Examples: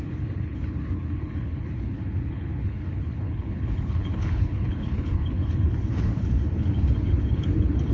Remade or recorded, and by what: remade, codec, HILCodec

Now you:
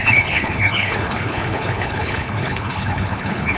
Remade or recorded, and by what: remade, codec, HILCodec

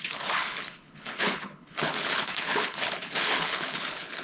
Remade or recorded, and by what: remade, codec, HILCodec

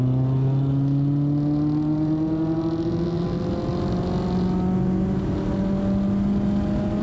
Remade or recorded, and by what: recorded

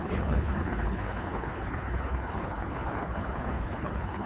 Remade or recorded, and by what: remade, codec, HILCodec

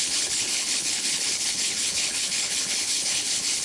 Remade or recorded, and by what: remade, codec, HILCodec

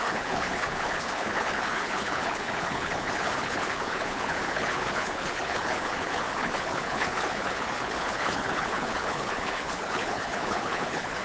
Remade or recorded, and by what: remade, codec, HILCodec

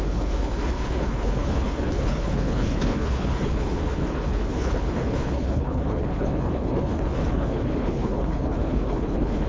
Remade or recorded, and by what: remade, codec, HILCodec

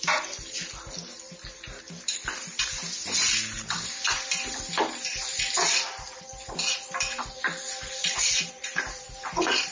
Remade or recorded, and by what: recorded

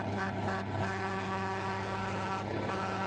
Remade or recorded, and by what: remade, codec, HILCodec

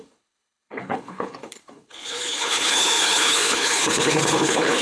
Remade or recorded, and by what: remade, codec, HILCodec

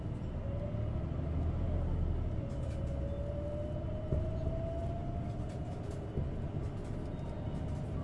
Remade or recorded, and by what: recorded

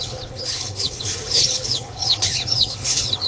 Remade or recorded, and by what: remade, codec, HILCodec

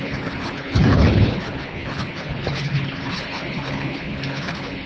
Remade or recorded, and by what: remade, codec, HILCodec